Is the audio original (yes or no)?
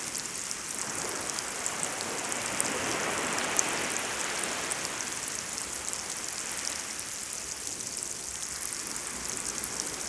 yes